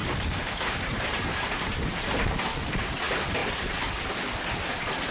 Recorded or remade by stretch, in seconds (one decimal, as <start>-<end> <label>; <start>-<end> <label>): 0.0-2.3 remade; 2.3-3.4 recorded; 3.4-4.1 remade; 4.1-5.1 recorded